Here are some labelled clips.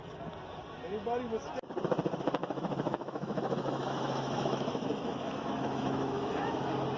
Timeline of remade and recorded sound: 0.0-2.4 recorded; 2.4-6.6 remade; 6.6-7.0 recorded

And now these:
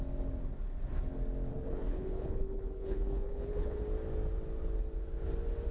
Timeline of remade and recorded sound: 0.0-1.5 recorded; 1.5-3.8 remade; 3.8-5.7 recorded